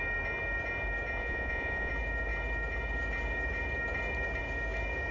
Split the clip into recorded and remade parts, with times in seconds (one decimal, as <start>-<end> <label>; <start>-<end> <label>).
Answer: 0.0-1.2 recorded; 1.2-1.9 remade; 1.9-5.1 recorded